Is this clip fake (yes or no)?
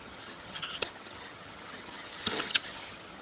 yes